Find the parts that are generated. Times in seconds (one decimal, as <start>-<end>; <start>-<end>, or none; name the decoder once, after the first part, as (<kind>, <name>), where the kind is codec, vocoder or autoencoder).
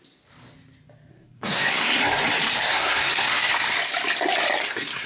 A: 1.1-2.0 (codec, SNAC); 2.7-3.5; 4.6-5.1